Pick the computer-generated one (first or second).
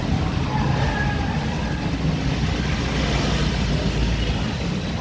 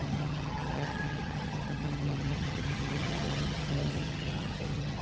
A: second